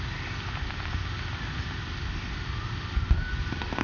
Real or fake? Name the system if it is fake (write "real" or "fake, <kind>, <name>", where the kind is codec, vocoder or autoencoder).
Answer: real